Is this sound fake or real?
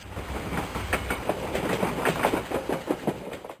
real